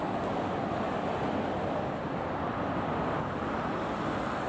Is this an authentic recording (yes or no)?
yes